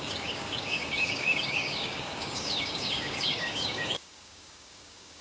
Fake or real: fake